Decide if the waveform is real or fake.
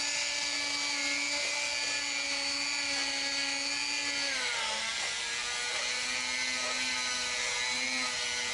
real